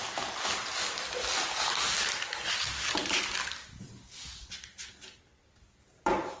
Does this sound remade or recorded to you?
recorded